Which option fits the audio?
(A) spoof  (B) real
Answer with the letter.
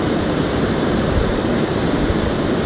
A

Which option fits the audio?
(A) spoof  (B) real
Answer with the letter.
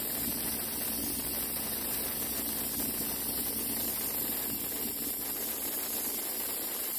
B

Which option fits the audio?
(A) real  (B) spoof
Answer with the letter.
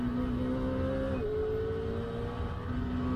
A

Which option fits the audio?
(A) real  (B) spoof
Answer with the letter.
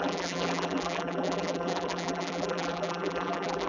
B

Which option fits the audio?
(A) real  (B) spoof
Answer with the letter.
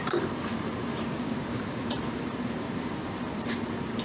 B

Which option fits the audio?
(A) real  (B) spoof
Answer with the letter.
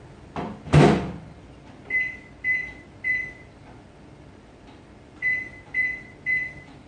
B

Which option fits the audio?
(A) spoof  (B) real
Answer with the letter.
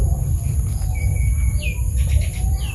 B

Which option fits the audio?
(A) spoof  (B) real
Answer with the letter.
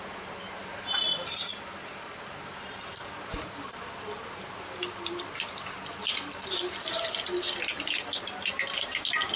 A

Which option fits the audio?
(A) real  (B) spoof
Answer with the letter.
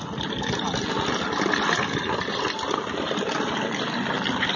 A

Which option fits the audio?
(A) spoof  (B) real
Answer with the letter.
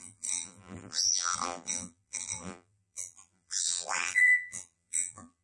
A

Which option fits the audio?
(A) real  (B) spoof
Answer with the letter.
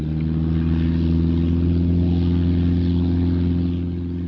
A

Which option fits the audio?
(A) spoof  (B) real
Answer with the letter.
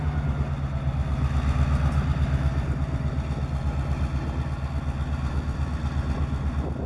B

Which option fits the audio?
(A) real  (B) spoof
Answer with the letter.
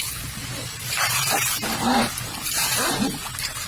B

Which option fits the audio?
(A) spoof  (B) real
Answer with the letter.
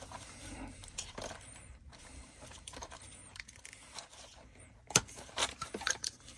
A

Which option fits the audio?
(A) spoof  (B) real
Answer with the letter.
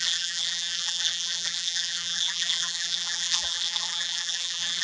A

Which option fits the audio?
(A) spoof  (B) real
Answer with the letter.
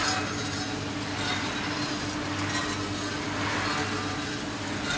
B